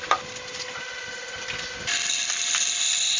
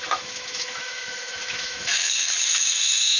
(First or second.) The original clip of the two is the first